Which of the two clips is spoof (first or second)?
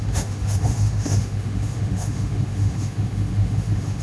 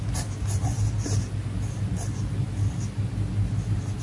first